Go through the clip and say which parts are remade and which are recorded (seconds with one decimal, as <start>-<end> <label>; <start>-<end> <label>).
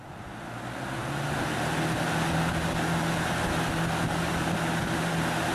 0.0-5.5 recorded